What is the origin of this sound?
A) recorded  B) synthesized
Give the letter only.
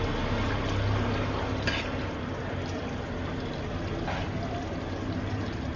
A